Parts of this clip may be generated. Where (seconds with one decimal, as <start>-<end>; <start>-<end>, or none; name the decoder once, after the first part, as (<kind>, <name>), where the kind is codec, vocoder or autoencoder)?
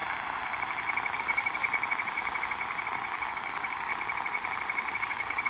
1.2-1.6 (codec, DAC); 3.3-3.9; 4.9-5.5